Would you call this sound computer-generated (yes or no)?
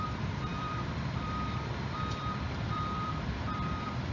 yes